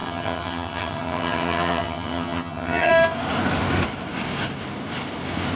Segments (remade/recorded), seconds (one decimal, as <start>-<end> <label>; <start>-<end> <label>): 0.0-2.9 remade; 2.9-5.5 recorded